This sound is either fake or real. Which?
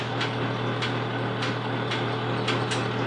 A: real